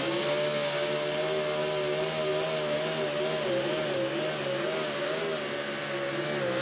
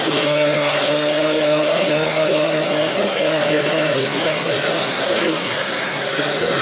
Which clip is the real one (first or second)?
first